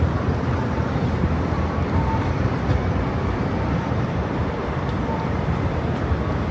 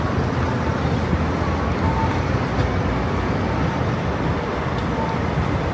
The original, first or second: second